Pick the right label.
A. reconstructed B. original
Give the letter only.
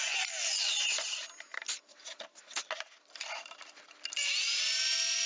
B